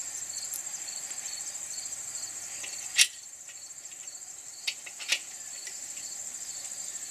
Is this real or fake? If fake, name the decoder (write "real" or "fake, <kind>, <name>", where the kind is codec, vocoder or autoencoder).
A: fake, vocoder, BigVGAN v2